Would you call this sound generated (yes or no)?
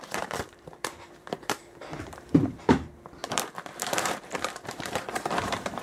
yes